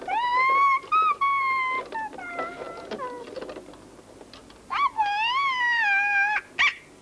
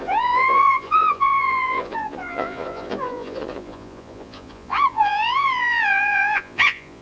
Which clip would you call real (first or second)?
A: first